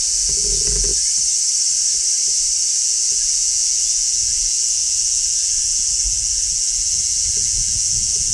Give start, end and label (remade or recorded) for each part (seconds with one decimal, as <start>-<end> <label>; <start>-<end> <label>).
0.0-0.9 remade; 0.9-2.8 recorded; 2.8-8.3 remade